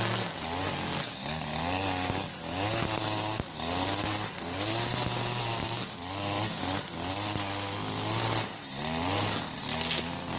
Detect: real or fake real